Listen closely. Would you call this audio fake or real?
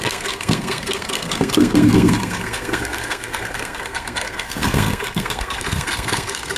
fake